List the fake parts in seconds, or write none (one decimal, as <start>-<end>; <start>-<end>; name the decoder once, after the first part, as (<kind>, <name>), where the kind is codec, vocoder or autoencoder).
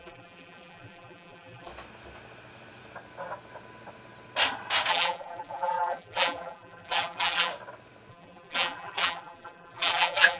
0.0-1.7 (vocoder, BigVGAN v2); 4.9-7.5; 8.1-10.4